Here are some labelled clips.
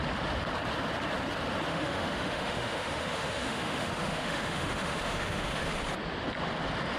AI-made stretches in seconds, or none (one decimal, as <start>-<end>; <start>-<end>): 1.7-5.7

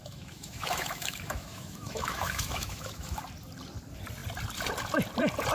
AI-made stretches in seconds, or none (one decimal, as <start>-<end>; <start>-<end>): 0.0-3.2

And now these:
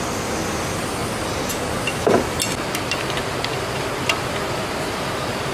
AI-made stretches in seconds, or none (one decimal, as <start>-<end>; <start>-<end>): none

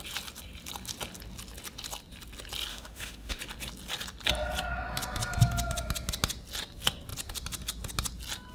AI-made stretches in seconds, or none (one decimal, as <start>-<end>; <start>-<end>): 2.7-3.4